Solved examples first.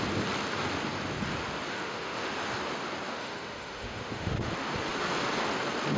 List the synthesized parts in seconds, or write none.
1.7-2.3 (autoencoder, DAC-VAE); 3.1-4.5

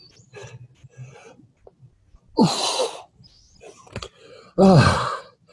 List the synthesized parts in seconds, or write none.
none

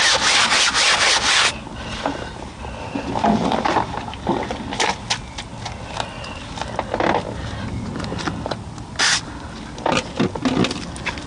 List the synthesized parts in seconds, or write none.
none

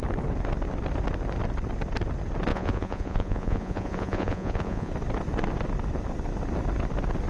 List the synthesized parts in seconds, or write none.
2.5-4.9 (vocoder, Vocos)

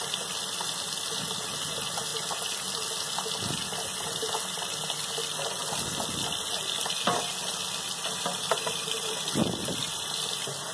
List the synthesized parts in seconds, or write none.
none